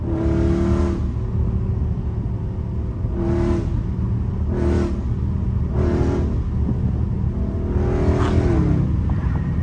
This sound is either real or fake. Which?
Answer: real